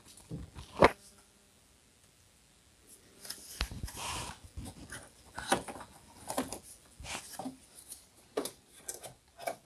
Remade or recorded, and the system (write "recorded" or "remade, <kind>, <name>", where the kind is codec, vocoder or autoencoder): recorded